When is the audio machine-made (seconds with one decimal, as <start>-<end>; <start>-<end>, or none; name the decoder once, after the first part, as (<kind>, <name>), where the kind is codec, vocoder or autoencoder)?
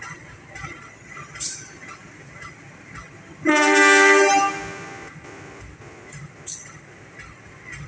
none